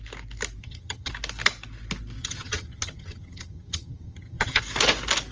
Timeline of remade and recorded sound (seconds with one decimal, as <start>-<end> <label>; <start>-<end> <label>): 0.0-0.6 recorded; 0.6-1.1 remade; 1.1-2.2 recorded; 2.2-4.6 remade; 4.6-5.3 recorded